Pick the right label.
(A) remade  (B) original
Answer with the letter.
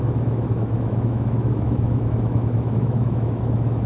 A